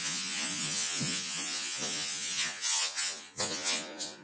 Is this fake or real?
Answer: fake